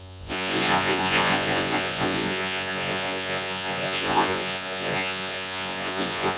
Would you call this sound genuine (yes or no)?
no